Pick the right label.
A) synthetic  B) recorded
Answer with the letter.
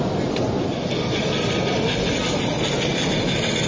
B